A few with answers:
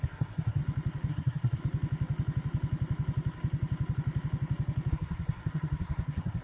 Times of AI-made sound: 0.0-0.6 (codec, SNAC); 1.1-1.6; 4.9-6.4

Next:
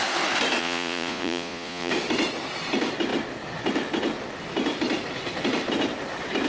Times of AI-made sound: 0.6-1.9 (vocoder, Vocos)

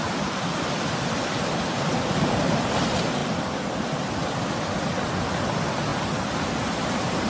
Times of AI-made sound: 0.0-2.3 (vocoder, BigVGAN v2)

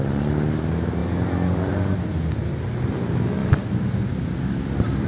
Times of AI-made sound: none

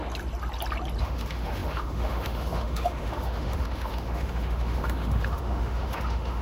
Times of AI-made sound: 1.0-6.4 (autoencoder, DAC-VAE)

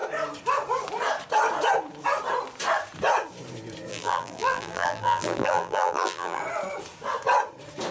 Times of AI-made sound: 3.9-6.4 (vocoder, BigVGAN v2)

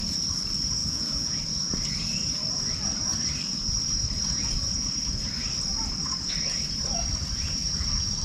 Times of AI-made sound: 0.8-1.4 (vocoder, Vocos)

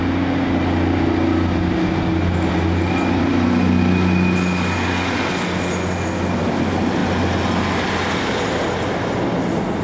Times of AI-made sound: none